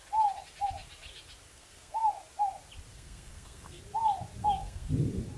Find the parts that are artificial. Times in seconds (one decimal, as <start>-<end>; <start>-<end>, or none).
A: 1.5-2.1; 2.9-3.8; 4.4-4.9

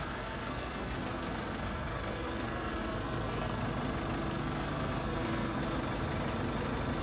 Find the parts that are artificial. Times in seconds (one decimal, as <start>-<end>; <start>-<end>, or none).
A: 0.0-3.6; 4.3-5.6

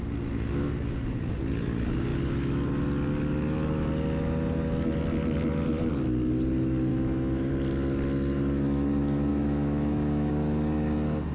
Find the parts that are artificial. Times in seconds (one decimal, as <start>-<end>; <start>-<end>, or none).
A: 6.9-7.5; 9.3-10.3

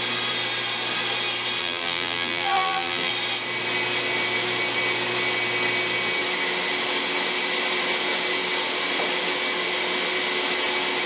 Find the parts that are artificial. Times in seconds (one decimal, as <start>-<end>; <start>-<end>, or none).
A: 1.6-3.1